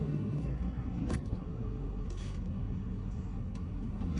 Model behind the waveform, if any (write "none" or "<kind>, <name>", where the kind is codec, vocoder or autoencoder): codec, SNAC